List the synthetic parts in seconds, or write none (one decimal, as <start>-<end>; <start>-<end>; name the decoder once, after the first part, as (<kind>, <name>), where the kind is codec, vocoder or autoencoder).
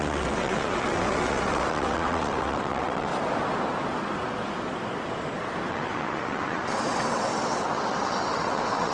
0.0-3.1 (vocoder, WaveNeXt); 5.7-8.9